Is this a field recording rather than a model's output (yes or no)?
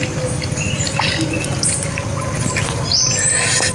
yes